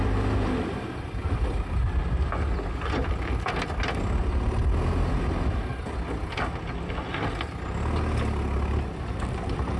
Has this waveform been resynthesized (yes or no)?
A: no